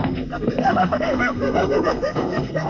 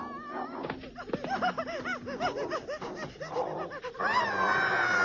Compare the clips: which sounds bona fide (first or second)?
second